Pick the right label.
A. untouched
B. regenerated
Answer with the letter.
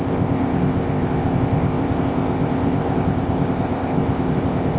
B